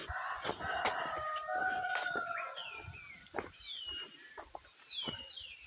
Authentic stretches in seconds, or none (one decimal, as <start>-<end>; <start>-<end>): 0.5-1.6; 2.7-5.7